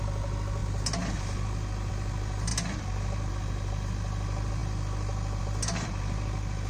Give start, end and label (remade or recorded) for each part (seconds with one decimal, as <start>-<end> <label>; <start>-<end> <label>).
0.0-6.7 recorded